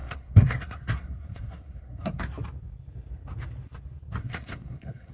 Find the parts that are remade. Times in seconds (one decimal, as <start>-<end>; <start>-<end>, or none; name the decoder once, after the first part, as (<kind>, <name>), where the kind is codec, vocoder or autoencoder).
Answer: 0.0-2.2 (codec, SNAC); 4.2-5.1